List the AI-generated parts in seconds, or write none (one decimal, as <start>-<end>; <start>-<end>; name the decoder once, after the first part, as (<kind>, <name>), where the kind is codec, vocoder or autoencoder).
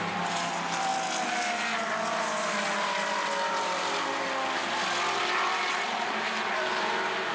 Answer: 0.0-0.9 (vocoder, BigVGAN v2); 5.2-7.3